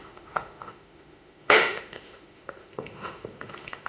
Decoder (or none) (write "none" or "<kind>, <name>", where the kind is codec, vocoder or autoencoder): autoencoder, DAC-VAE